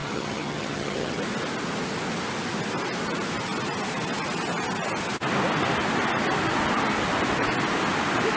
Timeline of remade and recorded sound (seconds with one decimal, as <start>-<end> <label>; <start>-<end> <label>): 0.0-1.2 remade; 1.2-8.4 recorded